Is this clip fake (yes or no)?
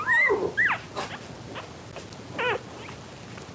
no